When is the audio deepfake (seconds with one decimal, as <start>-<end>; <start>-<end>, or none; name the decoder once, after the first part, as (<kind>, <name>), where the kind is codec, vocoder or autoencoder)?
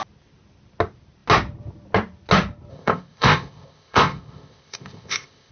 2.7-5.5 (codec, ZipCodec)